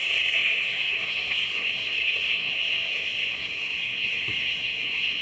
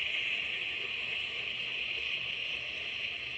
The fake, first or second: first